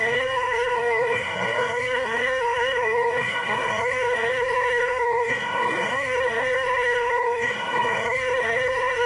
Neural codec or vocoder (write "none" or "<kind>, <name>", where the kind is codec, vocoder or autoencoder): codec, SNAC